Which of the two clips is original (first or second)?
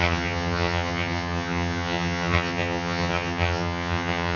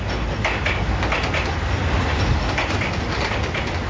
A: second